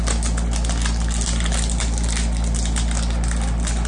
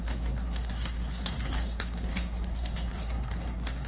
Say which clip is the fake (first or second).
second